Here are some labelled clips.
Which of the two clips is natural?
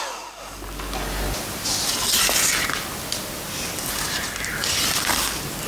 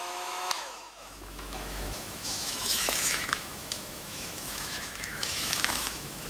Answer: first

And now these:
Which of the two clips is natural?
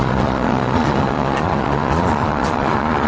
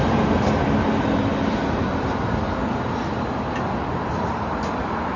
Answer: second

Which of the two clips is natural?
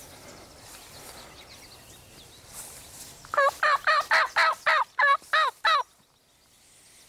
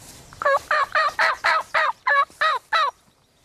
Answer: first